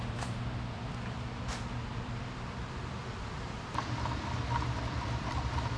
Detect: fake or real fake